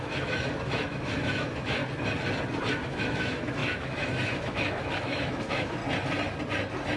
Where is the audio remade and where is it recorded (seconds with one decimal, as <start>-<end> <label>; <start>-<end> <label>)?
0.0-1.8 remade; 1.8-2.7 recorded; 2.7-5.8 remade; 5.8-7.0 recorded